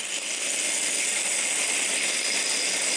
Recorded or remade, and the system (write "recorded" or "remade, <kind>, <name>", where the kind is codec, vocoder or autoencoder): recorded